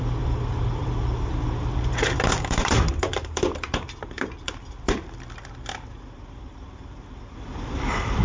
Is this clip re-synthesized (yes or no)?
yes